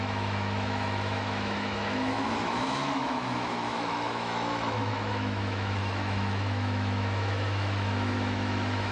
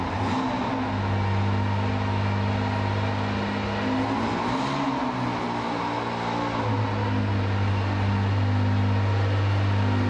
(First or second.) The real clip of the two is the second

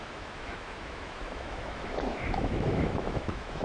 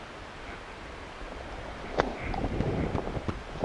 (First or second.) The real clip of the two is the second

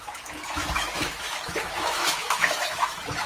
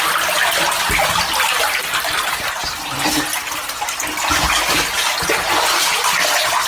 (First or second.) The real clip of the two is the second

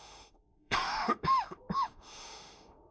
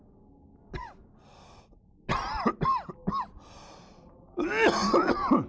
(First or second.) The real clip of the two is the second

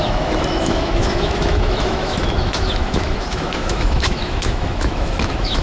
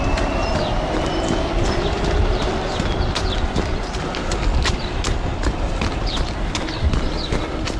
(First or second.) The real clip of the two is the second